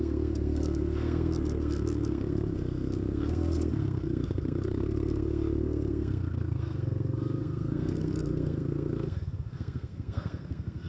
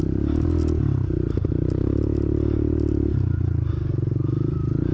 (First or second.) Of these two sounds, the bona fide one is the second